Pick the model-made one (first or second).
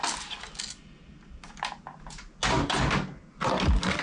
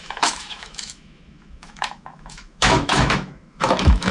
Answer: second